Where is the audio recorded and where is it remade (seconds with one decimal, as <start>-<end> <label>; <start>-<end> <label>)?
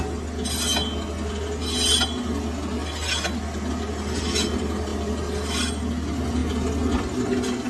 0.0-7.7 recorded